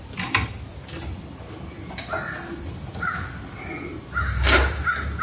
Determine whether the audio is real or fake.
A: real